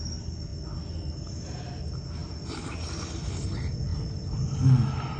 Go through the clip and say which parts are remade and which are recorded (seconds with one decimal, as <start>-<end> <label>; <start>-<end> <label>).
0.0-5.2 recorded